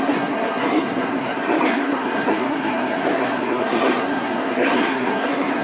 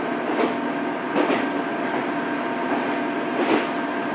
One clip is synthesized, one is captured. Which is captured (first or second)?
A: second